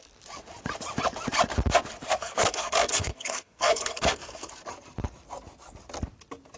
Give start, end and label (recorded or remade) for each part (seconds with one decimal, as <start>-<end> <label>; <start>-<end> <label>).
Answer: 0.0-2.1 recorded; 2.1-4.5 remade; 4.5-6.6 recorded